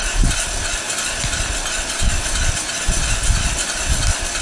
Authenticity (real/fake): real